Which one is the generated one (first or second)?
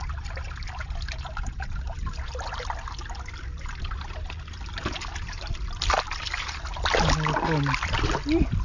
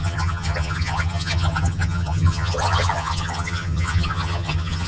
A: second